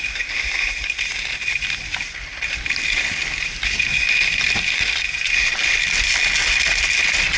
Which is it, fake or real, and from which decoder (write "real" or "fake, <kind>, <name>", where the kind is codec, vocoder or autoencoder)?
real